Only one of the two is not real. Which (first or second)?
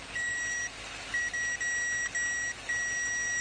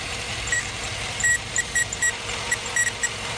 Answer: second